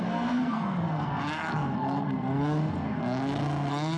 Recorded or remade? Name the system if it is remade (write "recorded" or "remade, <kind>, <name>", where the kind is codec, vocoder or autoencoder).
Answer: remade, codec, SNAC